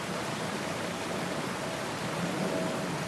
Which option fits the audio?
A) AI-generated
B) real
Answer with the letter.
B